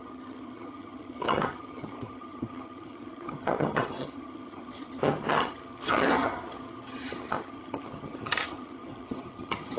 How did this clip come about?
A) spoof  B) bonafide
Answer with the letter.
A